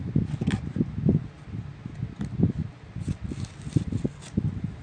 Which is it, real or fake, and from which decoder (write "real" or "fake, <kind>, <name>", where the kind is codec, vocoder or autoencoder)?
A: real